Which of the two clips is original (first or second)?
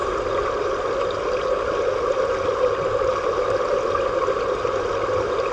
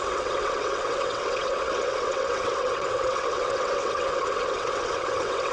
first